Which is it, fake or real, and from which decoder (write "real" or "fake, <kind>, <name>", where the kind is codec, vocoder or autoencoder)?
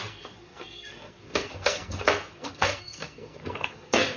fake, codec, SNAC